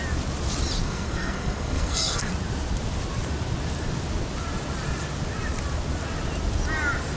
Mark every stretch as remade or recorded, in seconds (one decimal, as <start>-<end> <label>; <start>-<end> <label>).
0.0-0.8 recorded; 0.8-2.3 remade; 2.3-7.2 recorded